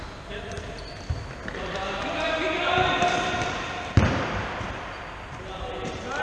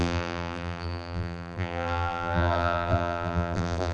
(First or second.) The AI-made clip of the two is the second